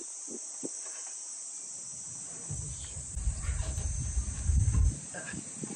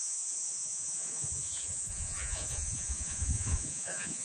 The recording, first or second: first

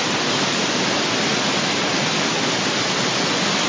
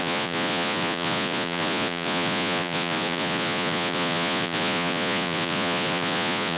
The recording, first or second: first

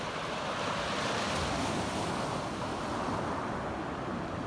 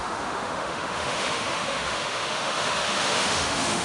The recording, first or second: first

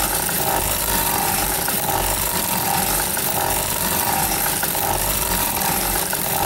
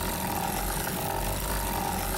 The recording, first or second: second